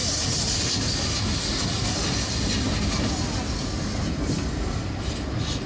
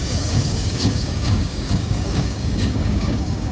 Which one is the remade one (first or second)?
second